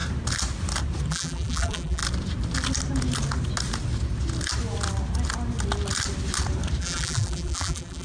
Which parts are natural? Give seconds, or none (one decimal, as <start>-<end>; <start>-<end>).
0.0-1.1; 2.0-6.8